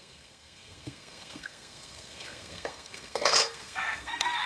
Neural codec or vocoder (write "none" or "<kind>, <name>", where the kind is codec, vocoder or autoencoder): codec, SNAC